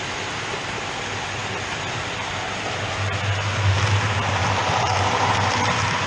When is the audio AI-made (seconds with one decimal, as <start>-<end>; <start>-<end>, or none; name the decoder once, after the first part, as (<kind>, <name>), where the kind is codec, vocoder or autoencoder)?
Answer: none